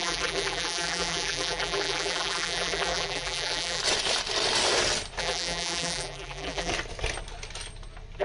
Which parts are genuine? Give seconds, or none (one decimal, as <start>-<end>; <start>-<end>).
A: 3.8-5.2; 6.7-8.2